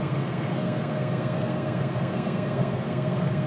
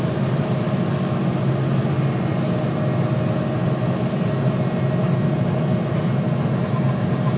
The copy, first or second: first